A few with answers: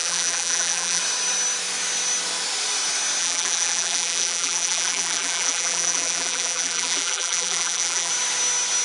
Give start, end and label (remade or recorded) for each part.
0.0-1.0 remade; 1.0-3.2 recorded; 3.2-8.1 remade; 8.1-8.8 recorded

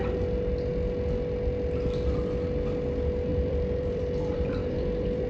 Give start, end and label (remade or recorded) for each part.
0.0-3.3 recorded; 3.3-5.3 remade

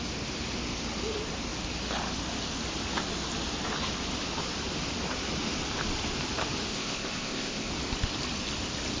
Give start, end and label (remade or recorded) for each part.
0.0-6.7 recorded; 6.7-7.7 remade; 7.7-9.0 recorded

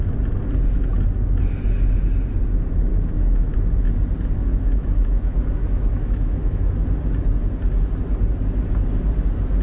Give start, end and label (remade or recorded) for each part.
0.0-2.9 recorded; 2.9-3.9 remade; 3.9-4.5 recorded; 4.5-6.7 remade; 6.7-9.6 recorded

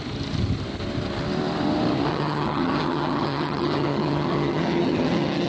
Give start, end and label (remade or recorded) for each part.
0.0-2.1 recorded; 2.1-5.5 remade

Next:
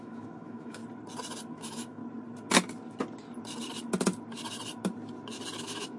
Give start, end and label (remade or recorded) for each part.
0.0-0.8 remade; 0.8-1.5 recorded; 1.5-2.0 remade; 2.0-5.6 recorded; 5.6-6.0 remade

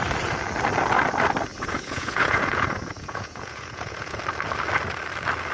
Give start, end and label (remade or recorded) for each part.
0.0-1.5 recorded; 1.5-4.2 remade; 4.2-5.5 recorded